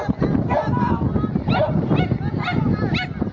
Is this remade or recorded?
recorded